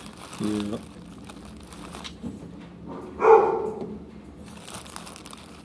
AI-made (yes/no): no